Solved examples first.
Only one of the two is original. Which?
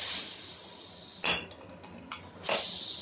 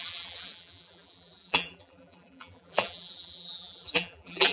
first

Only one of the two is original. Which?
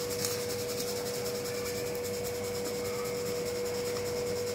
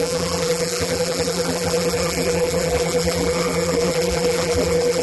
first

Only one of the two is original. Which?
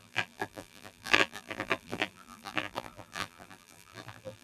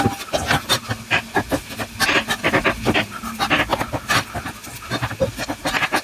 second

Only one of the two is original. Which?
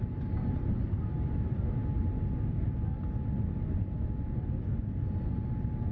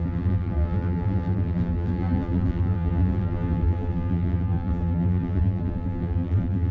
first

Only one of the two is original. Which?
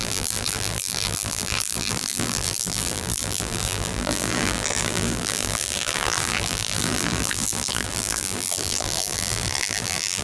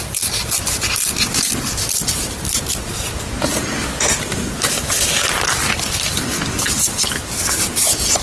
second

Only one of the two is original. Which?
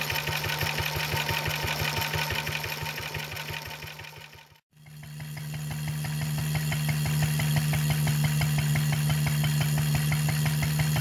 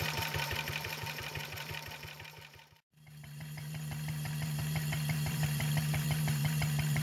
first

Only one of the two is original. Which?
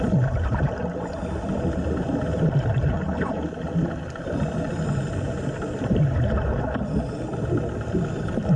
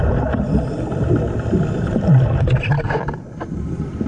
first